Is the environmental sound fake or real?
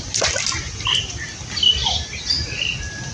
real